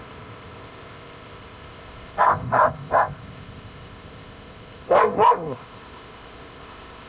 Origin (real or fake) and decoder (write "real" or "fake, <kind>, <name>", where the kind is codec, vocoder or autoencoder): fake, codec, ZipCodec